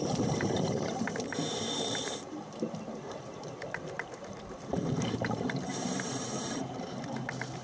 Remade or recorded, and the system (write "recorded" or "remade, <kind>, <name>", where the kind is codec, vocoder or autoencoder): remade, vocoder, BigVGAN v2